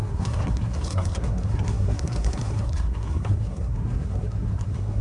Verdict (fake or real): fake